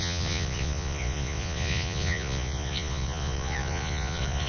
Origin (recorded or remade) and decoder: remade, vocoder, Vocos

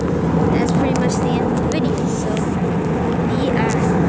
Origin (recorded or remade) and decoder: recorded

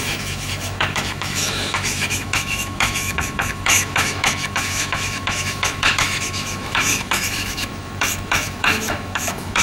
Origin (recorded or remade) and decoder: remade, autoencoder, DAC-VAE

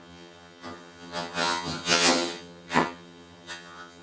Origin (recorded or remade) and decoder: remade, vocoder, HiFi-GAN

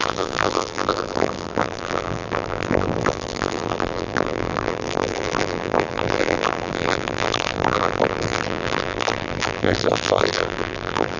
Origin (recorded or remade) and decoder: remade, vocoder, BigVGAN v2